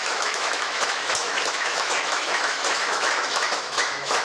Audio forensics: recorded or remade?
remade